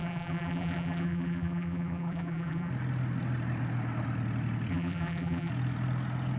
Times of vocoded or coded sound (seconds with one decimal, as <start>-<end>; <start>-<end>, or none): 0.0-2.7; 4.7-5.5